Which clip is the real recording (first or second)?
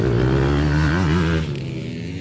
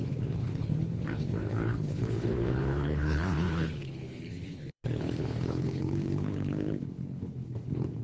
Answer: first